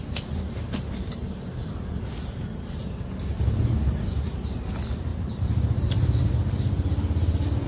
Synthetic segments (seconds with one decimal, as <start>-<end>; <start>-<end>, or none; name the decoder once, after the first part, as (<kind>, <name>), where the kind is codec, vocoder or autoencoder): 5.1-6.3 (vocoder, BigVGAN v2)